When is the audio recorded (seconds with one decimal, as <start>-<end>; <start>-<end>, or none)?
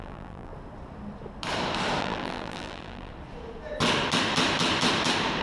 0.5-2.0; 3.1-5.4